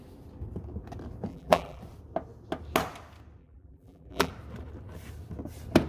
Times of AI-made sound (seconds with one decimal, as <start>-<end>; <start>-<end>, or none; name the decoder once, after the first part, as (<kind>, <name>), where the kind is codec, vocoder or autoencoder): 1.3-1.8 (vocoder, BigVGAN v2); 3.4-4.3